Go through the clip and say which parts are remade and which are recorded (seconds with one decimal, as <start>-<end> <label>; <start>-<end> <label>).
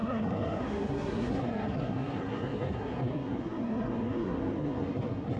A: 0.0-5.4 remade